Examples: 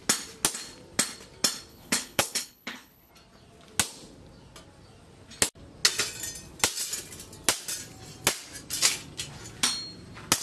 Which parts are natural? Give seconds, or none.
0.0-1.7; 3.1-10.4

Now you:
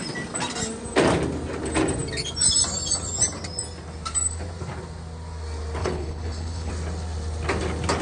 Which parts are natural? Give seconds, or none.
0.0-5.8; 6.7-8.0

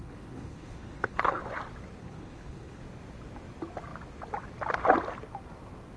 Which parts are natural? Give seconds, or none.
1.4-2.0; 2.8-6.0

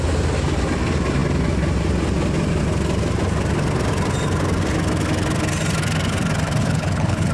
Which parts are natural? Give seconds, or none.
0.0-6.6